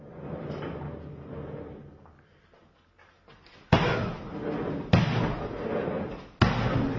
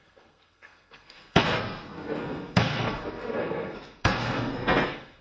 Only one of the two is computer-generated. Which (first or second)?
second